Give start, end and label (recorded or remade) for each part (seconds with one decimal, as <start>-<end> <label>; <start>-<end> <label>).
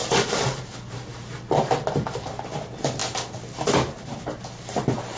0.0-5.2 recorded